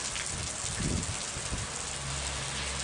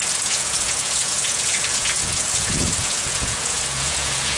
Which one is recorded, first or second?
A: first